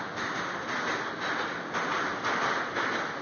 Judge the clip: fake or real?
real